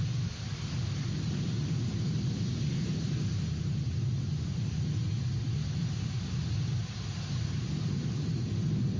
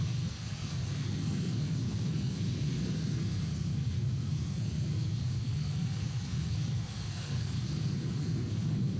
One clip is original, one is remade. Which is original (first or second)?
first